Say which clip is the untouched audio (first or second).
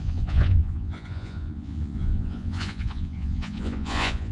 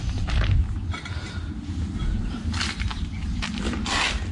second